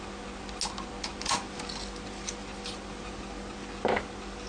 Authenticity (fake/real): real